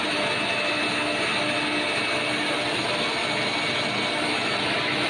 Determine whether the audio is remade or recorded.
recorded